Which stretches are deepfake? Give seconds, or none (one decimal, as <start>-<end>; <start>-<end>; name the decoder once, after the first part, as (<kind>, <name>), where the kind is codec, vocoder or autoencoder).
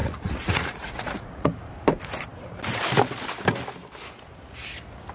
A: 0.0-1.7 (vocoder, Vocos)